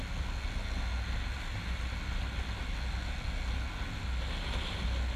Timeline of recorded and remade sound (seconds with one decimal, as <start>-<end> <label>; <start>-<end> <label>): 0.0-5.2 recorded